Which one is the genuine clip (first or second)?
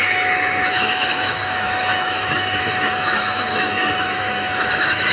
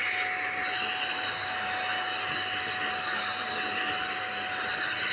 second